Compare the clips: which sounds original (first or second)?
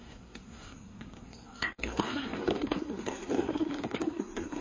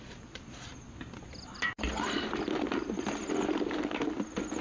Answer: second